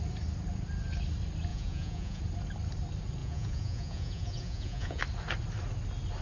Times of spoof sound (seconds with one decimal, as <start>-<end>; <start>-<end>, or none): 1.5-2.2; 3.2-5.0